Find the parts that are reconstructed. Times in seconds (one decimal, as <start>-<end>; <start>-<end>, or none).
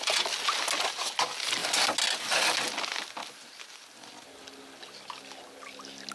none